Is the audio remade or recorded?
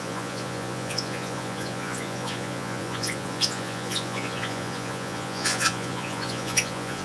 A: remade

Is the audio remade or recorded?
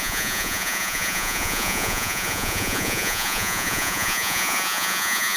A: remade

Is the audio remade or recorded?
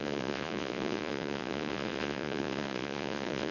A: remade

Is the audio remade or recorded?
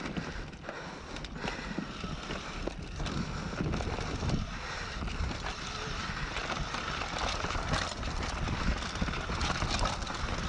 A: recorded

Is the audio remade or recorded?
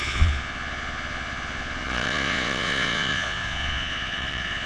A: remade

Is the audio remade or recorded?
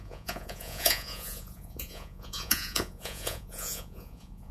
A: remade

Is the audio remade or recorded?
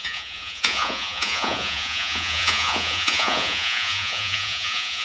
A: remade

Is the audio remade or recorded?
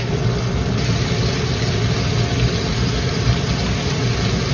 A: recorded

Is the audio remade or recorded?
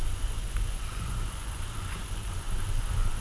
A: remade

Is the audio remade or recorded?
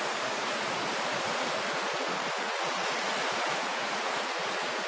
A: remade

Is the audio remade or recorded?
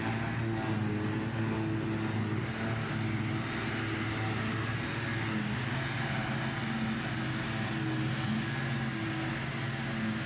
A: recorded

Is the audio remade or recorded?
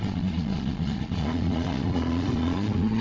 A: remade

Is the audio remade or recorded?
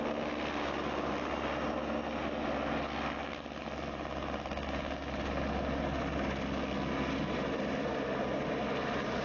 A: recorded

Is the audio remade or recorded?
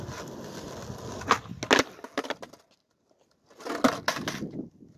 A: recorded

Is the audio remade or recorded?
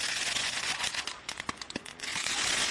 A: remade